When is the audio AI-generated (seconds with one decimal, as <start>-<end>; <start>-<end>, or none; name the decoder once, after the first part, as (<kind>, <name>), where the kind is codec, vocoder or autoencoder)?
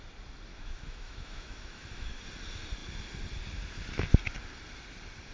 0.5-2.2 (autoencoder, DAC-VAE)